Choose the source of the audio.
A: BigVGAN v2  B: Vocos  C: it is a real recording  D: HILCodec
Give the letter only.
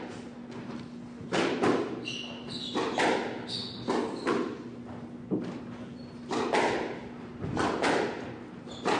C